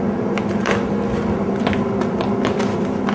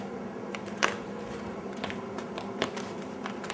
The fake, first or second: second